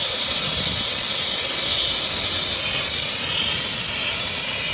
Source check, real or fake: real